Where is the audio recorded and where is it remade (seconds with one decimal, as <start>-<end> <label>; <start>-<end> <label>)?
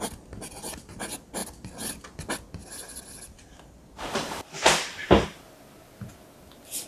0.0-1.4 recorded; 1.4-1.9 remade; 1.9-2.6 recorded; 2.6-3.4 remade; 3.4-6.9 recorded